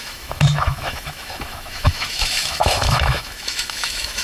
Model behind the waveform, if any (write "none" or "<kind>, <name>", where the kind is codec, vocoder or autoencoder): autoencoder, DAC-VAE